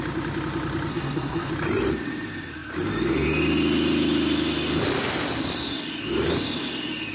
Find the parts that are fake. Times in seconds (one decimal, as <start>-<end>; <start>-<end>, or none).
0.9-1.5